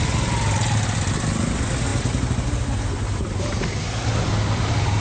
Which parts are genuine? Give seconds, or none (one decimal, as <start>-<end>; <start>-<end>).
0.0-5.0